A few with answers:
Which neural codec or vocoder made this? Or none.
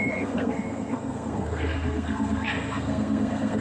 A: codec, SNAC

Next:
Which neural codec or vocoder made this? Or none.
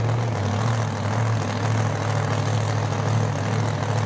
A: none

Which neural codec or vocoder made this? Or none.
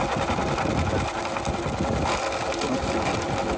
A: none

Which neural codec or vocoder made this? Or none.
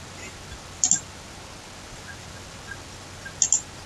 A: none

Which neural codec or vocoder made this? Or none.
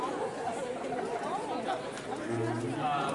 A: none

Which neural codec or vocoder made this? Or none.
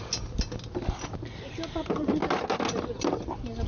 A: none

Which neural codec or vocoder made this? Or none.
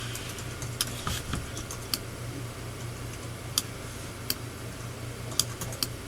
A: none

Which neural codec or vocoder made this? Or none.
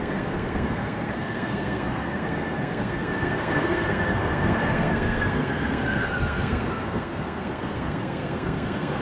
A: codec, SNAC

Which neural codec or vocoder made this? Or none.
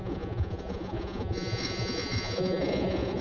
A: vocoder, Vocos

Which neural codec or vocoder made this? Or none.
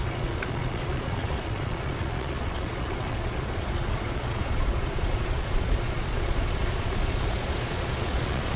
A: vocoder, Vocos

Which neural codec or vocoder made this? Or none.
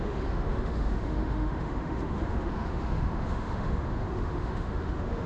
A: autoencoder, DAC-VAE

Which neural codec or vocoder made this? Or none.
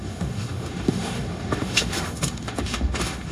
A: autoencoder, DAC-VAE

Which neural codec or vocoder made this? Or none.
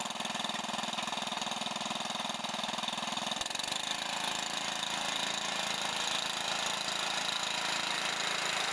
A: none